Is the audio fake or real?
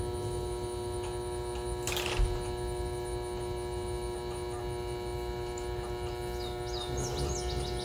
real